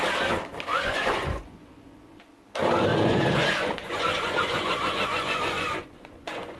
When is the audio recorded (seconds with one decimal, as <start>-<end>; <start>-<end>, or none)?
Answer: 0.0-0.7; 2.3-2.9